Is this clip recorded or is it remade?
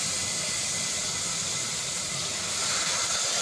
recorded